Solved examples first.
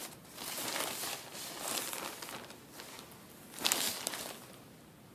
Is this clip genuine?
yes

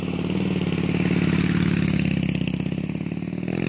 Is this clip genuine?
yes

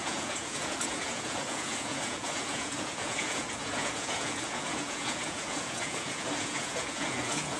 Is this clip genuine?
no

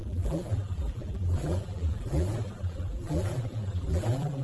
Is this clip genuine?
no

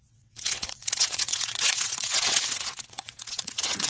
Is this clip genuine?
no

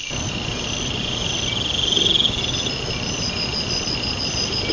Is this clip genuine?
yes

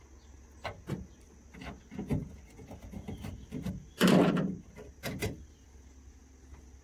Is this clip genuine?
yes